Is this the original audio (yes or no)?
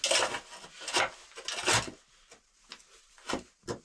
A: yes